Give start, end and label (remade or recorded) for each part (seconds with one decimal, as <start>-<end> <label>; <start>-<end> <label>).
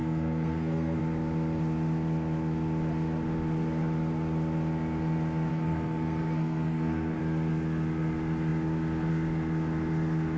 0.0-1.0 remade; 1.0-5.5 recorded; 5.5-7.2 remade; 7.2-10.4 recorded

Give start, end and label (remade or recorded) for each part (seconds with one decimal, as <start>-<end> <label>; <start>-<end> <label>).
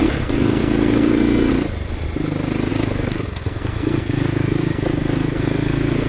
0.0-1.5 remade; 1.5-2.7 recorded; 2.7-6.1 remade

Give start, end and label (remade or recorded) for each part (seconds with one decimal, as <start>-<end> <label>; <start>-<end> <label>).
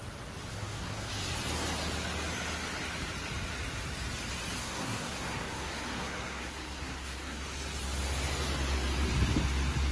0.0-0.5 recorded; 0.5-1.1 remade; 1.1-4.6 recorded; 4.6-7.4 remade; 7.4-9.9 recorded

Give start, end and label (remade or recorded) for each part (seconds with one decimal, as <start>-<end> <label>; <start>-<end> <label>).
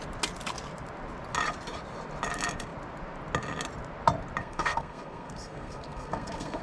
0.0-4.4 recorded; 4.4-6.6 remade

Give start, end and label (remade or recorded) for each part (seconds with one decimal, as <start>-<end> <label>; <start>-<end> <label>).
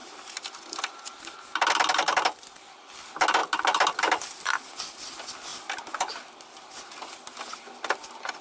0.0-8.4 recorded